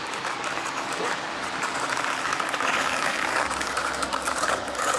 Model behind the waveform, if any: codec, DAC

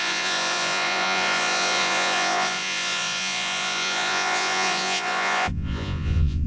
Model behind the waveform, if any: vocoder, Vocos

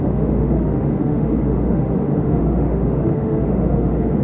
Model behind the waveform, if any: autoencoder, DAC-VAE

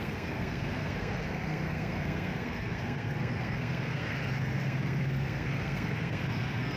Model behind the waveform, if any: codec, SNAC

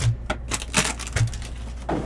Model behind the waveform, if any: none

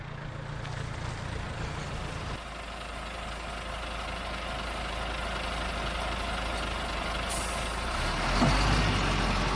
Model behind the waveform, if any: none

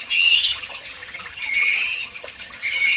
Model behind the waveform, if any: vocoder, HiFi-GAN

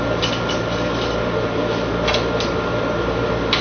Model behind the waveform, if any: none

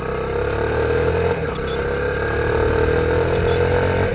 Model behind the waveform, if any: none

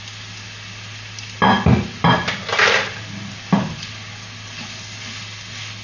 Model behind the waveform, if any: none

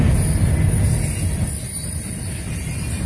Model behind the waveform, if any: none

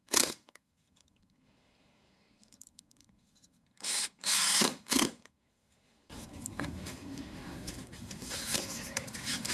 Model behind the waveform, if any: codec, SNAC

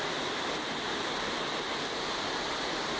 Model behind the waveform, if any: none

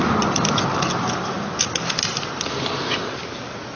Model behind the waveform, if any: none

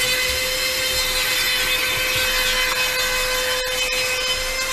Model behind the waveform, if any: none